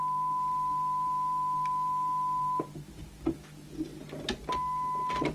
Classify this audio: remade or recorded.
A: recorded